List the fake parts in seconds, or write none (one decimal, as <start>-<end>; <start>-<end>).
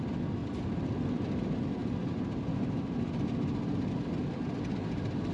none